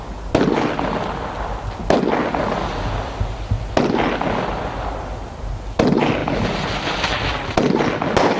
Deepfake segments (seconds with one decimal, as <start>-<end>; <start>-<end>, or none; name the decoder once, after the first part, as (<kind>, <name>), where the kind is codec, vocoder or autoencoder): none